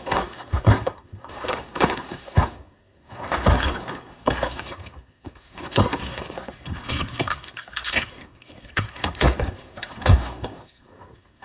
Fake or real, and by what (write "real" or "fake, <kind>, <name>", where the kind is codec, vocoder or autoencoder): fake, codec, SNAC